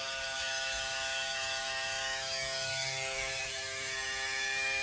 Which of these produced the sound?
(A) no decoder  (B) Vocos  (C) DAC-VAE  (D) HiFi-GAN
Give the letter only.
C